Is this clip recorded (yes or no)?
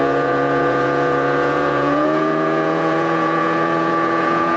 no